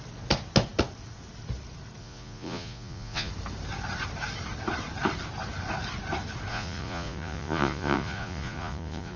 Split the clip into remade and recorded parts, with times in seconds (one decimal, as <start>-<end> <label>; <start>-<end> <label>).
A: 0.0-2.0 recorded; 2.0-3.3 remade; 3.3-6.5 recorded; 6.5-9.2 remade

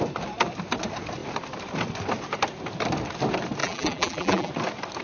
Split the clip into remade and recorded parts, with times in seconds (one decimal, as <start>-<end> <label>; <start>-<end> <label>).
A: 0.0-3.6 recorded; 3.6-4.5 remade; 4.5-5.0 recorded

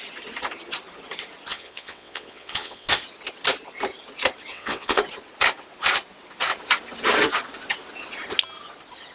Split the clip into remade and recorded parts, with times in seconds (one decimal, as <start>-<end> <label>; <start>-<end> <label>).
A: 0.0-1.5 recorded; 1.5-2.9 remade; 2.9-4.5 recorded; 4.5-5.0 remade; 5.0-9.1 recorded

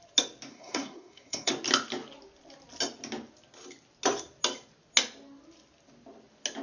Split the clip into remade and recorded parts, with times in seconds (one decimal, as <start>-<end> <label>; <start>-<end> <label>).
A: 0.0-0.5 recorded; 0.5-1.5 remade; 1.5-6.6 recorded

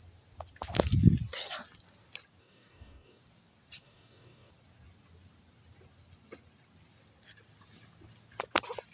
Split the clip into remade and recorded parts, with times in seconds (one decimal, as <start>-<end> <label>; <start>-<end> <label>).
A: 0.0-2.4 recorded; 2.4-3.2 remade; 3.2-3.8 recorded; 3.8-4.5 remade; 4.5-8.9 recorded

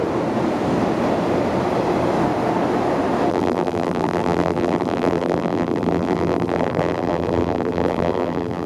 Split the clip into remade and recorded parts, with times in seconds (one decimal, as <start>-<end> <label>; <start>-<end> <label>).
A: 0.0-3.3 recorded; 3.3-8.7 remade